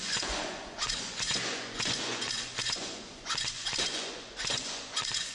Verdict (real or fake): fake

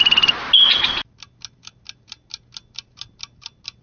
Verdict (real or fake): real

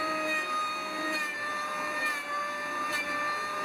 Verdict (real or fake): fake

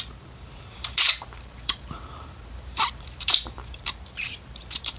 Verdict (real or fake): fake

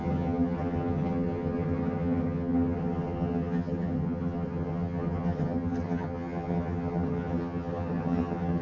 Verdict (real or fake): fake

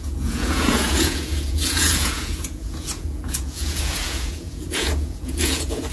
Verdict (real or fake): fake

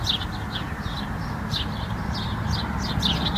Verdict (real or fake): real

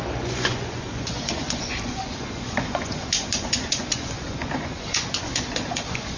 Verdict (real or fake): fake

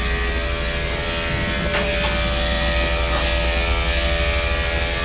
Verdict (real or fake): real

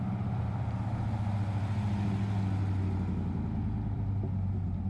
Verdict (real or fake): real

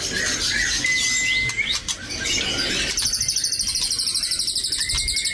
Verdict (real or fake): real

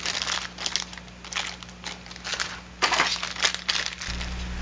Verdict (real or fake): real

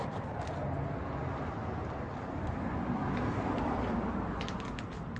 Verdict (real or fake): real